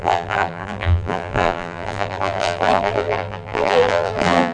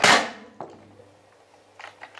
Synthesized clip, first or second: first